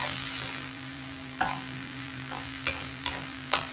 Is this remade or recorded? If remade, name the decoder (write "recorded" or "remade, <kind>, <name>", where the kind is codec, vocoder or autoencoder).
remade, vocoder, BigVGAN v2